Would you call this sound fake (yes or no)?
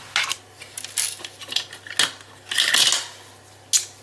no